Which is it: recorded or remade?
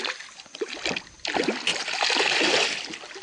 recorded